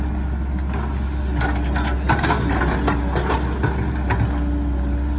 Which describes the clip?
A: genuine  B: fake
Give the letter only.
A